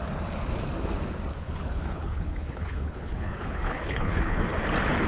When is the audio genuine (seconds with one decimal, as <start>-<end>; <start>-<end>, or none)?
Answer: 0.0-1.3; 4.4-5.1